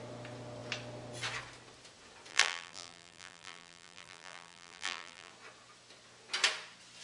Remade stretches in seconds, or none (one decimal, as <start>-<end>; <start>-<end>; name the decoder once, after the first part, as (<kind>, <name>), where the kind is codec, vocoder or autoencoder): 2.3-5.3 (vocoder, BigVGAN v2)